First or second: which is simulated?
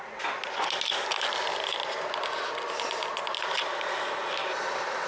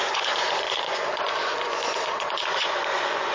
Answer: second